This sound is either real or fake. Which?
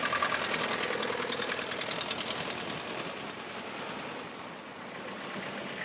fake